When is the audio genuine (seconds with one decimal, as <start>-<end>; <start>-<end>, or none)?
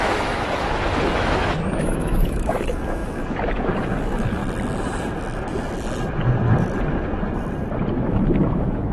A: 4.4-7.9